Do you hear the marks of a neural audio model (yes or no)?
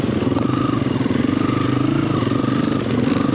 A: no